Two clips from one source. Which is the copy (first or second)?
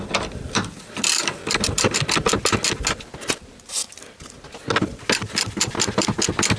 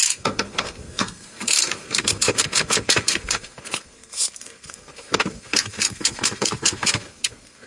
second